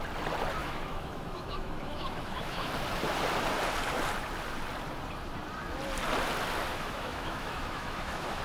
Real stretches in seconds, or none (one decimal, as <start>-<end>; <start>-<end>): 0.0-0.6; 2.7-6.7